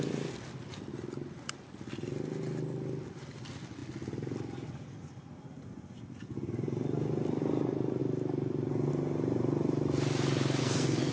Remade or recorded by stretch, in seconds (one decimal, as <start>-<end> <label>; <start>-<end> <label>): 0.0-10.6 recorded; 10.6-11.1 remade